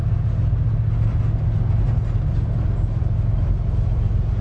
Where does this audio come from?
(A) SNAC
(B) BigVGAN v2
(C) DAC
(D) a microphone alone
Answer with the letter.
D